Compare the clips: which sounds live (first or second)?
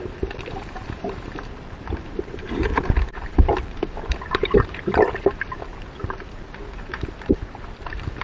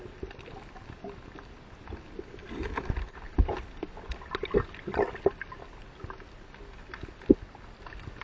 second